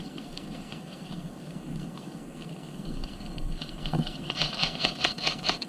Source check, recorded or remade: remade